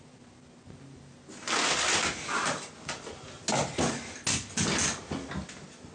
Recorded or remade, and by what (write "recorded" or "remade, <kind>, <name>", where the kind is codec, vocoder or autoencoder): recorded